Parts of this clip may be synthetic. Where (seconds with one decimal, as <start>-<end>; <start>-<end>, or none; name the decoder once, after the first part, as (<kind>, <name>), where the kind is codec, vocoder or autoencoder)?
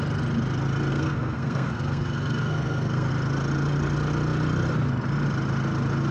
0.9-3.1 (codec, SNAC)